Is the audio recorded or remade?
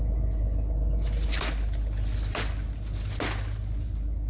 recorded